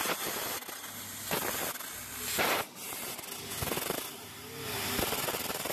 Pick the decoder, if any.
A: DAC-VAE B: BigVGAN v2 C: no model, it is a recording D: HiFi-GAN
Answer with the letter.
C